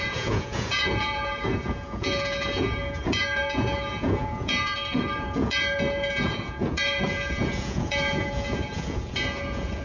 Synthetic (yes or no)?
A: yes